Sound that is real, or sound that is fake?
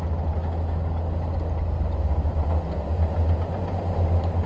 real